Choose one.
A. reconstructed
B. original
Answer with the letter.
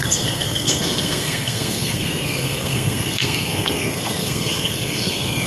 A